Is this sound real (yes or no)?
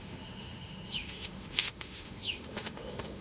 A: no